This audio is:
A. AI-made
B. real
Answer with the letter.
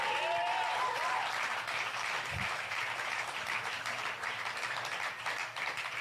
A